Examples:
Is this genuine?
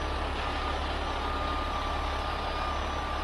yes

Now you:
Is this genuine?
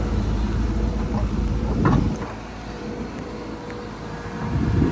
yes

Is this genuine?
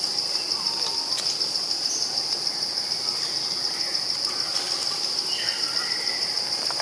yes